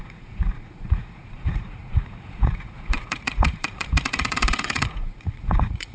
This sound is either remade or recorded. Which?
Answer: remade